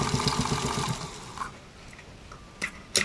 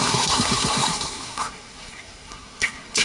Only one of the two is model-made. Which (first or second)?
second